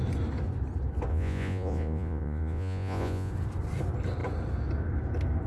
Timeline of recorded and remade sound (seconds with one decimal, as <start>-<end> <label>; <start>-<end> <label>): 0.0-1.1 recorded; 1.1-3.3 remade; 3.3-5.5 recorded